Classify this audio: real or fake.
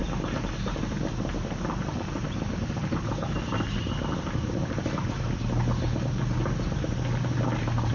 real